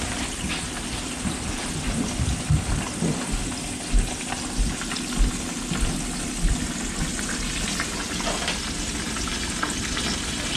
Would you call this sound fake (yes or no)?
no